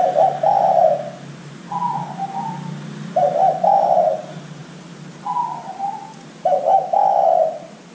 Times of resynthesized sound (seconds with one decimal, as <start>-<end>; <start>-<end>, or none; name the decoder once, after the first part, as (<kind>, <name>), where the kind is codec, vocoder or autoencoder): none